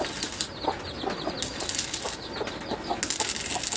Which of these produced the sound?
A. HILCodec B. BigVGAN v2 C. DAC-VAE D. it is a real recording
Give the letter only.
D